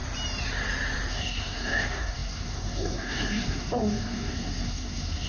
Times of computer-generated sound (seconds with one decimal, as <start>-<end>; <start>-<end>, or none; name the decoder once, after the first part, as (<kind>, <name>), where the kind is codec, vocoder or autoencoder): 1.1-5.3 (codec, SNAC)